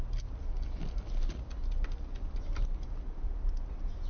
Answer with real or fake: real